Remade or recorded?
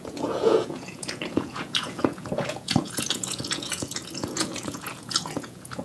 remade